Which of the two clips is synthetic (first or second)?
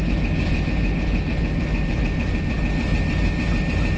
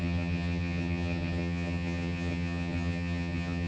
second